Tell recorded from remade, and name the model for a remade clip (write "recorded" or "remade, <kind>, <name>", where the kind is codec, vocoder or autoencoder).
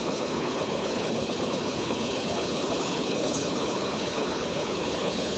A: remade, codec, HILCodec